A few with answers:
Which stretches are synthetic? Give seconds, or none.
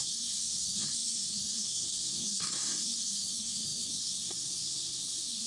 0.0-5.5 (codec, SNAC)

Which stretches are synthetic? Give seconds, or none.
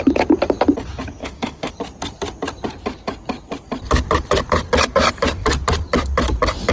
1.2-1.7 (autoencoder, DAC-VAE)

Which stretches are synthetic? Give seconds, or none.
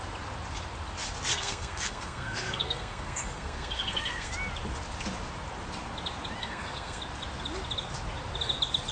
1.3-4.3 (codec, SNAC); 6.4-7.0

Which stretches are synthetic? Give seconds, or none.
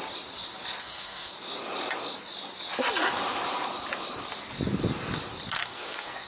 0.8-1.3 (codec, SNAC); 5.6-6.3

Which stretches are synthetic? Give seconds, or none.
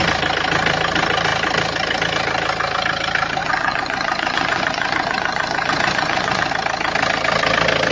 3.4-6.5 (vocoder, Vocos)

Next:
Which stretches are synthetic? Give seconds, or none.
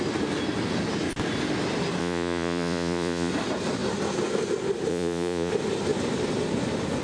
2.0-3.3 (vocoder, Vocos); 4.9-5.5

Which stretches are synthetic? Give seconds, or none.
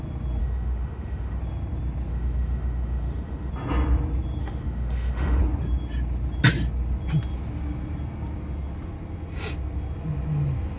0.4-1.4 (autoencoder, DAC-VAE); 2.1-3.5; 4.4-5.4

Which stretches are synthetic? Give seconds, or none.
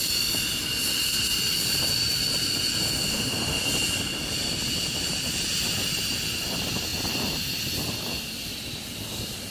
3.1-3.6 (autoencoder, DAC-VAE)